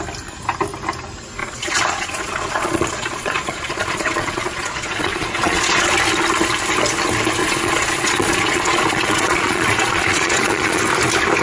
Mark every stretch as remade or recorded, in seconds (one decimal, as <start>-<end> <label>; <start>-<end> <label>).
0.0-1.4 recorded; 1.4-5.9 remade; 5.9-7.4 recorded; 7.4-10.8 remade; 10.8-11.4 recorded